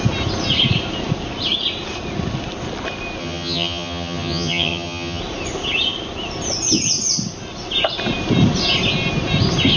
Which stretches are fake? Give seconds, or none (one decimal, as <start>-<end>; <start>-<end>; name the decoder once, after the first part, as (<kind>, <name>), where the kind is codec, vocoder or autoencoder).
3.2-5.2 (vocoder, HiFi-GAN)